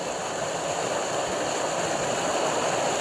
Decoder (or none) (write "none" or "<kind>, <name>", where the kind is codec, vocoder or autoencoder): none